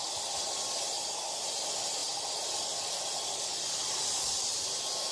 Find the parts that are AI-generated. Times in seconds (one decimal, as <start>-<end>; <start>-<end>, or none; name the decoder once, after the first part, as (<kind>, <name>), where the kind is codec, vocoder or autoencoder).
none